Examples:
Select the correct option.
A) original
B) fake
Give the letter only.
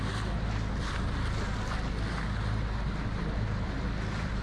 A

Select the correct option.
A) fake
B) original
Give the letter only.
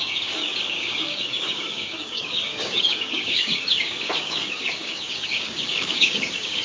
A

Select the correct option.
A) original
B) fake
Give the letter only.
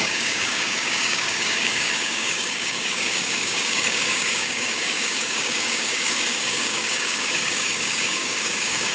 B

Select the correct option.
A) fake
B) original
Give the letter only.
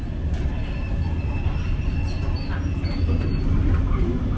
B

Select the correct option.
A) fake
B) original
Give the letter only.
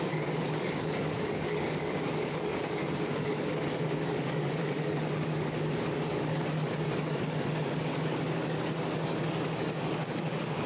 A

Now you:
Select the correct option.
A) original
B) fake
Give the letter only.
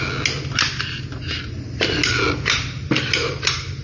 A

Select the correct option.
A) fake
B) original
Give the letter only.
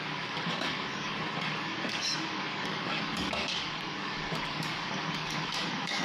A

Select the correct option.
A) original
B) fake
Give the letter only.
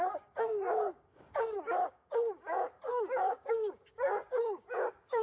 B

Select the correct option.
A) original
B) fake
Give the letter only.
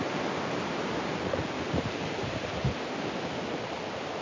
A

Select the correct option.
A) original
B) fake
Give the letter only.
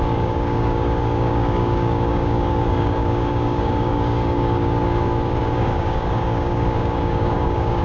B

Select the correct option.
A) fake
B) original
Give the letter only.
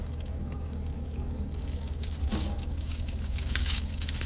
A